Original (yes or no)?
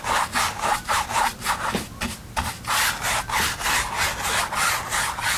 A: yes